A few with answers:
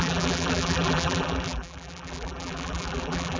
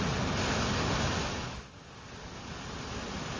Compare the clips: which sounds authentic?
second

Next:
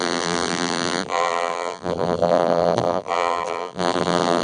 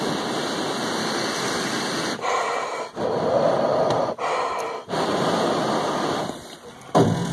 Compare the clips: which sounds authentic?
second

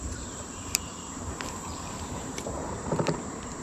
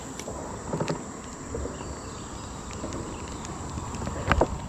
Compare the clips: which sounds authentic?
second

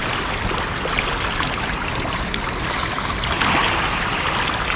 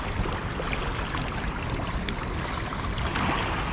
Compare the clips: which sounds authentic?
first